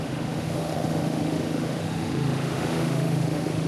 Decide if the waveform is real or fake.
fake